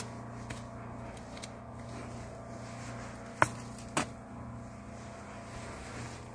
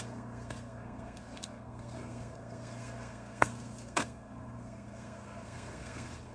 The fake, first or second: second